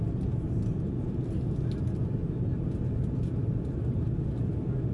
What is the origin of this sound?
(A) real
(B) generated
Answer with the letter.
A